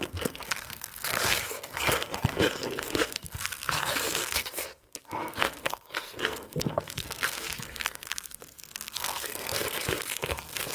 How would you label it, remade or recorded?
remade